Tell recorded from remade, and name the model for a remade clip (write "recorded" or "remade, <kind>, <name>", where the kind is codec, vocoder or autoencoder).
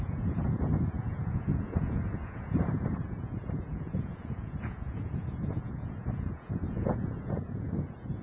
remade, vocoder, Vocos